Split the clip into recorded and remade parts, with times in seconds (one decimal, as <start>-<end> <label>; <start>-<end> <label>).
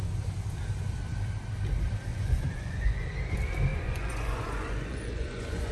0.0-2.1 recorded; 2.1-3.0 remade; 3.0-3.7 recorded; 3.7-5.7 remade